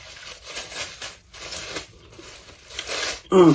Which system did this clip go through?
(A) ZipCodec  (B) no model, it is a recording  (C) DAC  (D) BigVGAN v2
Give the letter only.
B